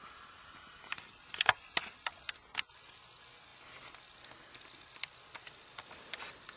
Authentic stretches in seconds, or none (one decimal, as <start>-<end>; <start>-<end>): 0.0-0.4; 1.6-6.6